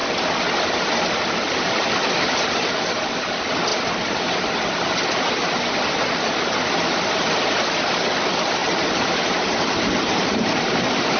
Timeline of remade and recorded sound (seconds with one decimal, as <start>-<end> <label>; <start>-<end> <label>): 0.0-2.0 recorded; 2.0-2.8 remade; 2.8-8.6 recorded; 8.6-11.2 remade